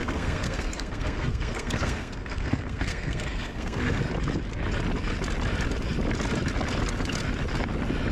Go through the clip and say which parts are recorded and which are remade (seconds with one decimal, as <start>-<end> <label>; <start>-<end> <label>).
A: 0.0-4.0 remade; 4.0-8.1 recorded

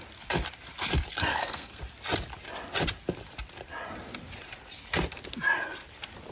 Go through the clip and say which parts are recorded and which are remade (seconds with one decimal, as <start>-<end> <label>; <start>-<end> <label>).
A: 0.0-1.3 recorded; 1.3-1.8 remade; 1.8-6.3 recorded

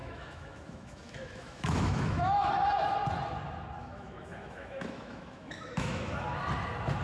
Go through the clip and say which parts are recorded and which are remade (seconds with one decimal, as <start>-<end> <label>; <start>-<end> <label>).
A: 0.0-2.5 remade; 2.5-3.8 recorded; 3.8-6.1 remade; 6.1-7.0 recorded

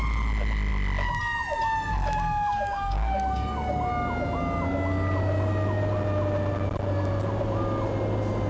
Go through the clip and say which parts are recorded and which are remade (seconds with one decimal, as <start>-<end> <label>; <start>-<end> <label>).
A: 0.0-2.5 recorded; 2.5-3.9 remade; 3.9-8.5 recorded

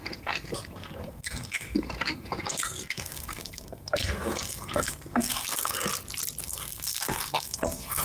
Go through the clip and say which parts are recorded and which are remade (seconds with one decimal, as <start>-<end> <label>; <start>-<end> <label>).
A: 0.0-5.9 remade; 5.9-6.4 recorded; 6.4-8.0 remade

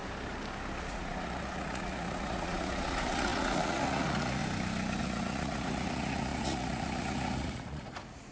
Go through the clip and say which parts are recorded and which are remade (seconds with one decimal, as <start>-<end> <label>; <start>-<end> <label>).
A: 0.0-0.8 recorded; 0.8-4.4 remade; 4.4-5.0 recorded; 5.0-8.3 remade